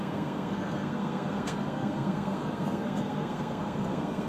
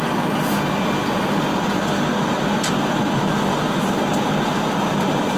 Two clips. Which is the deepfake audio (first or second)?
first